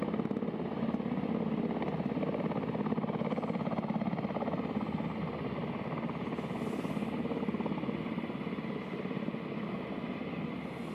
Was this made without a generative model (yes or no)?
yes